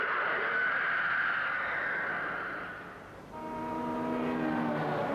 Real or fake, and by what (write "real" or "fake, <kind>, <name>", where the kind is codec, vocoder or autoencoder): real